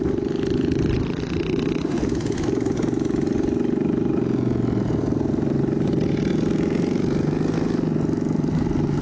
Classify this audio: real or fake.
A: real